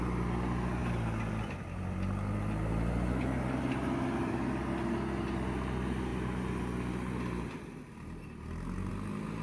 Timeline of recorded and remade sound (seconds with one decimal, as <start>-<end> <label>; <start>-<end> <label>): 0.0-9.4 recorded